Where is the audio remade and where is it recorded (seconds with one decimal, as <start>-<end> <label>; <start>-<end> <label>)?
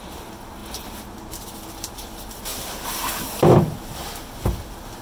0.0-5.0 recorded